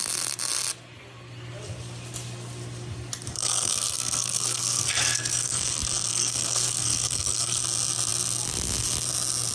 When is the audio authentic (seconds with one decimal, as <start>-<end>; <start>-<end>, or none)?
0.0-3.3; 5.6-6.1; 7.6-9.5